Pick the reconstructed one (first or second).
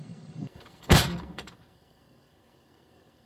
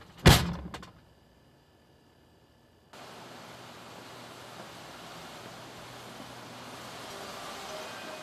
first